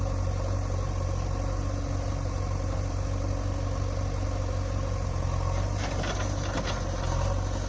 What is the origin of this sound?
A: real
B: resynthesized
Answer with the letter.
A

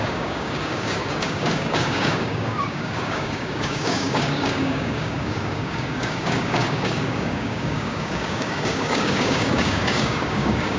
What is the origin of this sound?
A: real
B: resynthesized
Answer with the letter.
B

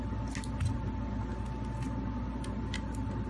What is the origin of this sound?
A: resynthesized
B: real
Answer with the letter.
B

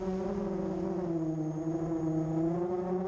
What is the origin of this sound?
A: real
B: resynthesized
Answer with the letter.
A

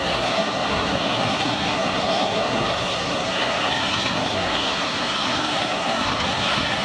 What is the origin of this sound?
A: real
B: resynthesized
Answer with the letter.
B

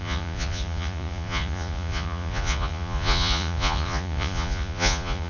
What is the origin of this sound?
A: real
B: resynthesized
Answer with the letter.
B